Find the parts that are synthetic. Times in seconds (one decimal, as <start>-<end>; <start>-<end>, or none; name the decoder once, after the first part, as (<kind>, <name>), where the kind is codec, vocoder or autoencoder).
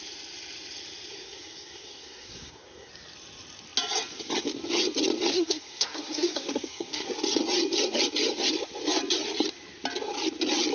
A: 1.1-2.9 (codec, SNAC); 5.3-7.1